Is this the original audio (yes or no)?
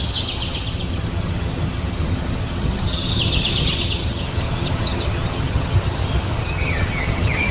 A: no